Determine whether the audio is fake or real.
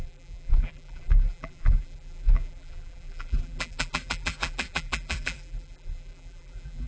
fake